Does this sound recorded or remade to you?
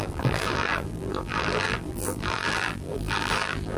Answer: remade